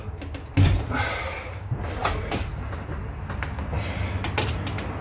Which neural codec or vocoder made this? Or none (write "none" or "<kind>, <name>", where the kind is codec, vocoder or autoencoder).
none